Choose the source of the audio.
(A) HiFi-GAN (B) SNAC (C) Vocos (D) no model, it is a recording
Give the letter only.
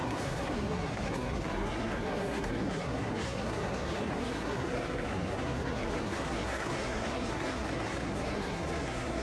B